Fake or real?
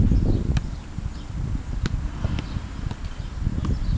real